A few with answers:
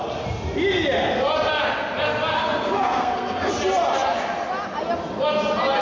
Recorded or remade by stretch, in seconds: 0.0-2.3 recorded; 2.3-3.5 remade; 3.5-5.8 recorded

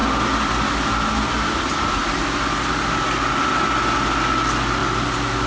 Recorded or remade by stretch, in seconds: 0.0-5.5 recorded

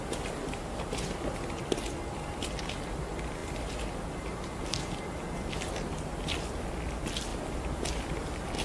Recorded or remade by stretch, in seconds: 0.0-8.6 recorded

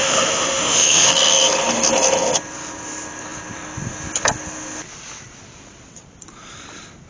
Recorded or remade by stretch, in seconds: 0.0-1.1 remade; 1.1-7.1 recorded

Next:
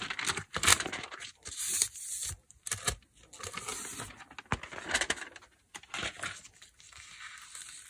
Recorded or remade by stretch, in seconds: 0.0-0.7 recorded; 0.7-1.6 remade; 1.6-7.9 recorded

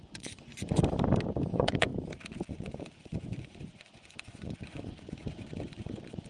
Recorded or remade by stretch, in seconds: 0.0-0.8 remade; 0.8-1.5 recorded; 1.5-1.9 remade; 1.9-2.5 recorded; 2.5-6.3 remade

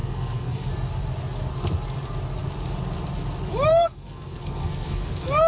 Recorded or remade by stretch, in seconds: 0.0-0.7 remade; 0.7-3.7 recorded; 3.7-5.5 remade